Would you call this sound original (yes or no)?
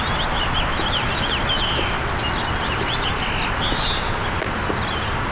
yes